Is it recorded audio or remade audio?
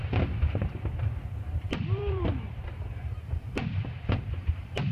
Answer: remade